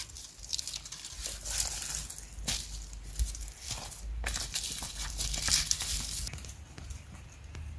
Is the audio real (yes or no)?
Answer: yes